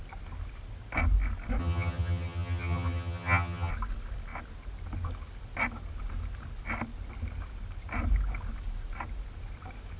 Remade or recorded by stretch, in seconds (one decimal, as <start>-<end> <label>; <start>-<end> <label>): 0.0-1.6 recorded; 1.6-3.7 remade; 3.7-10.0 recorded